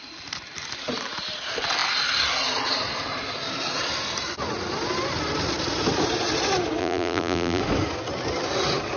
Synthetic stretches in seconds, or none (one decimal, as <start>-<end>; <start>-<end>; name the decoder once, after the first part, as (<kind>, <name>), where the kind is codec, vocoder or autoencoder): 6.8-7.6 (vocoder, BigVGAN v2)